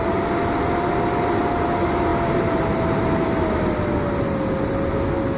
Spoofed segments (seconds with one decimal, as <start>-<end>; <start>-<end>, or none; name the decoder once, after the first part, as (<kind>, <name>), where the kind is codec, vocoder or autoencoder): none